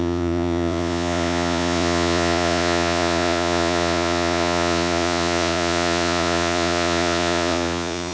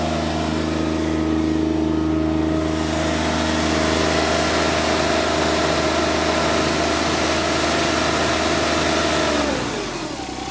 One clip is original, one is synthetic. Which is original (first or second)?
second